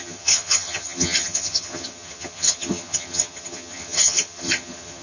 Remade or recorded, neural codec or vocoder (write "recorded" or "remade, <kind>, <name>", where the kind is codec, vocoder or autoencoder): remade, vocoder, HiFi-GAN